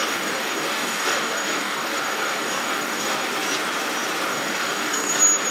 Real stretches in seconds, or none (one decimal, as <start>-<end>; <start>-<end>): 3.3-4.3; 5.1-5.5